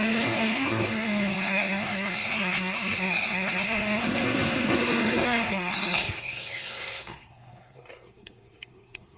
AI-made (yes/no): yes